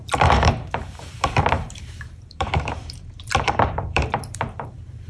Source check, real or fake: fake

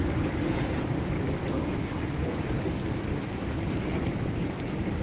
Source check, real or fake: fake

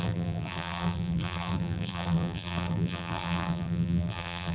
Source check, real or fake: fake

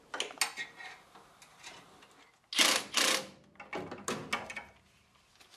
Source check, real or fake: real